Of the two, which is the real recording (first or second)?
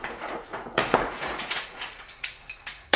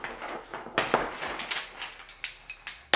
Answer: second